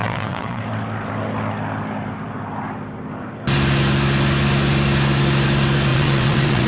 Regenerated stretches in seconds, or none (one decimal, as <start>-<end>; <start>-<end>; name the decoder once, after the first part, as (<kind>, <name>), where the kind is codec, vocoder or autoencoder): 0.0-0.6 (vocoder, WaveNeXt); 5.9-6.7